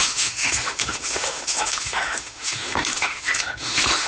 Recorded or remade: remade